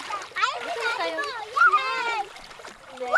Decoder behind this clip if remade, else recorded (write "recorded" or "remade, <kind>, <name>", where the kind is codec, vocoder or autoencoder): remade, vocoder, BigVGAN v2